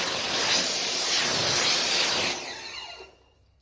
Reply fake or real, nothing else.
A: real